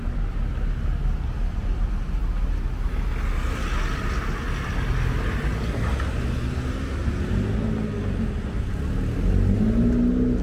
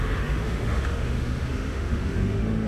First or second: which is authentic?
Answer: first